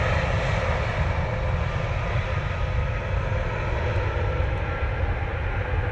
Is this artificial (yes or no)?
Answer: no